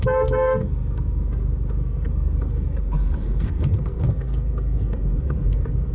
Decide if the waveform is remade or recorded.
remade